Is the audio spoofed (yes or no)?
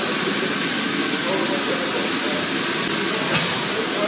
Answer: no